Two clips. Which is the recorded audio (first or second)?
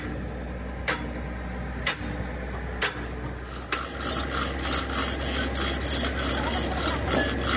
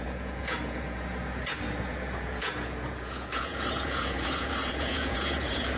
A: first